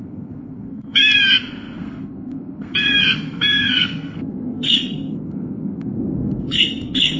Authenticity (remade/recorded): remade